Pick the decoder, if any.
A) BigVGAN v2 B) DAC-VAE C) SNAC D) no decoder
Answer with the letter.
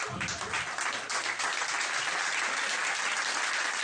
D